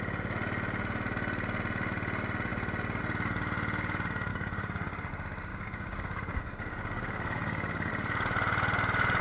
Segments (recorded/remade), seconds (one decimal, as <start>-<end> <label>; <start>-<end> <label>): 0.0-4.3 recorded; 4.3-5.1 remade; 5.1-5.5 recorded; 5.5-7.9 remade; 7.9-9.2 recorded